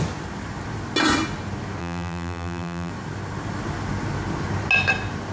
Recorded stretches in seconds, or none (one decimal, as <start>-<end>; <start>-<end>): 0.0-1.8; 2.9-5.3